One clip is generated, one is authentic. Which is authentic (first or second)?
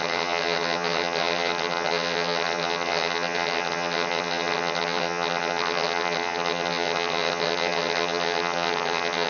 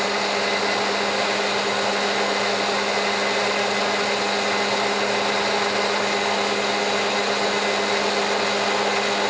second